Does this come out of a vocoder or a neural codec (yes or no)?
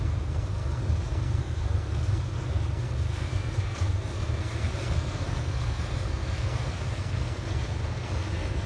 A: yes